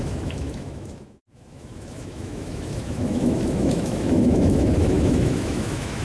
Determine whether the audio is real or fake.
fake